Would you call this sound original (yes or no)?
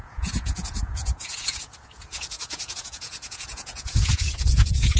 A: no